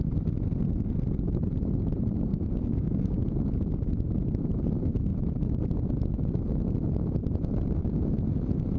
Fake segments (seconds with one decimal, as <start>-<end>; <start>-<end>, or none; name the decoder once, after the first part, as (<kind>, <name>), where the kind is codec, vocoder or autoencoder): 2.3-3.2 (codec, DAC)